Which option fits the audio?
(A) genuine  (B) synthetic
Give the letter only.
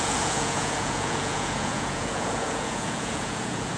B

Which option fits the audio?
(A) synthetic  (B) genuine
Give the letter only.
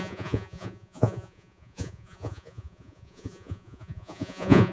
A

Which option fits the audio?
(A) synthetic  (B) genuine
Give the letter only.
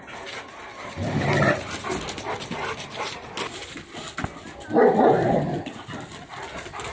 B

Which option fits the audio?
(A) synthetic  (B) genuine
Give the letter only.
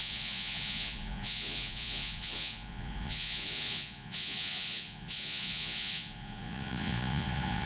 A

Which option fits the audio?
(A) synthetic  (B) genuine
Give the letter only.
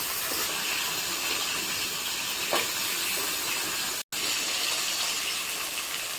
B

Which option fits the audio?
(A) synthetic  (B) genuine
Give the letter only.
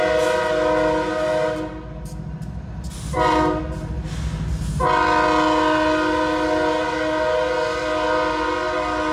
B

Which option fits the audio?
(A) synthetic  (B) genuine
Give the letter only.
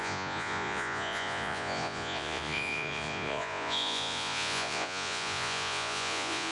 A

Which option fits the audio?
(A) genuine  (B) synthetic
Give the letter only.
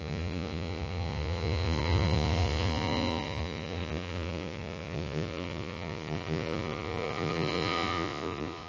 B